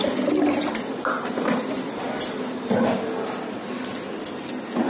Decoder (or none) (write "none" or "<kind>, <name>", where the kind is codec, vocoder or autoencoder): none